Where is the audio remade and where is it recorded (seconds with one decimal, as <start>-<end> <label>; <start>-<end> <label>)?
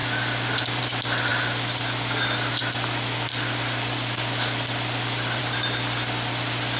0.0-6.8 recorded